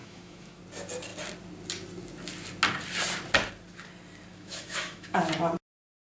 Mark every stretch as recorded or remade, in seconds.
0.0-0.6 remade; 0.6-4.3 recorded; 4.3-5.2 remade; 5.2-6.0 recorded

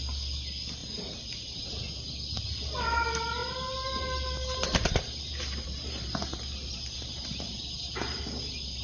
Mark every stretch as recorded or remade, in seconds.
0.0-0.8 recorded; 0.8-1.8 remade; 1.8-3.4 recorded; 3.4-8.2 remade; 8.2-8.8 recorded

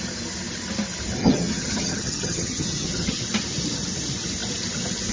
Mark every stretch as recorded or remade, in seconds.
0.0-1.2 recorded; 1.2-3.2 remade; 3.2-5.1 recorded

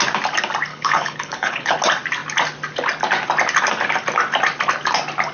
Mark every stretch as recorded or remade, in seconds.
0.0-0.7 recorded; 0.7-1.8 remade; 1.8-5.3 recorded

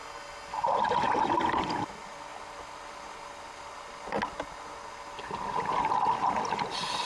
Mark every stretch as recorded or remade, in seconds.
0.0-7.1 recorded

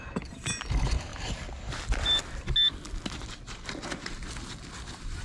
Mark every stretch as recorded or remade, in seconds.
0.0-1.1 remade; 1.1-4.2 recorded; 4.2-5.2 remade

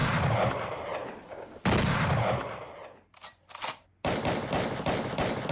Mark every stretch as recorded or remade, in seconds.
0.0-5.5 recorded